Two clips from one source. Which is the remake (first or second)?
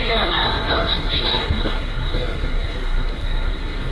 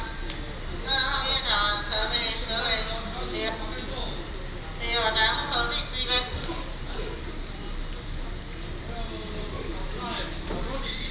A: first